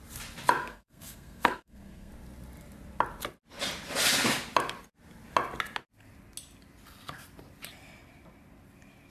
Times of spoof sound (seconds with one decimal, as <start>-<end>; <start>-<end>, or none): 0.6-2.1

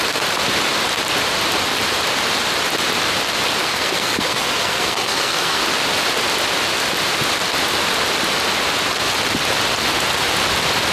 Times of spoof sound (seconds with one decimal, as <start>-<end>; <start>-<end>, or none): 3.6-5.6

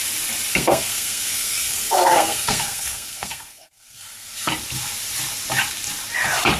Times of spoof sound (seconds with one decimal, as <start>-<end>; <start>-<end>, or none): 0.5-4.5